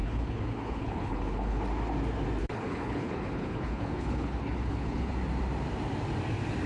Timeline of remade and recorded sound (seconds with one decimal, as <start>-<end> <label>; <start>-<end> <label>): 0.0-1.6 remade; 1.6-2.4 recorded; 2.4-5.1 remade; 5.1-6.7 recorded